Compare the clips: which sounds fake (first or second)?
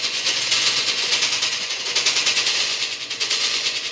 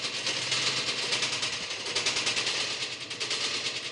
first